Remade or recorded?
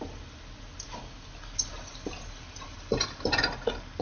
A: recorded